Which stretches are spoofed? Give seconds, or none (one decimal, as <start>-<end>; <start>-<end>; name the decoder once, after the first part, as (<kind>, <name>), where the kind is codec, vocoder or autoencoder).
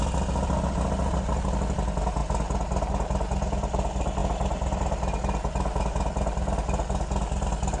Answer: none